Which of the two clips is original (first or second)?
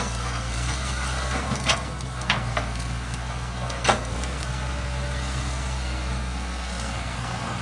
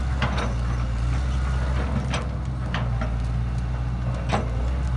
second